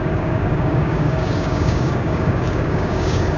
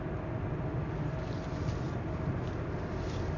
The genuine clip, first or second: second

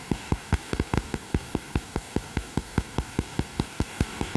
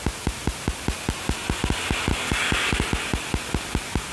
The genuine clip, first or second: second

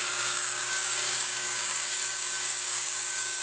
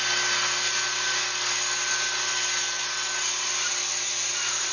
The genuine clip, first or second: second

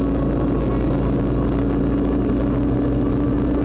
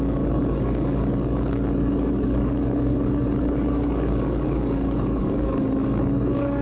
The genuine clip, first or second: first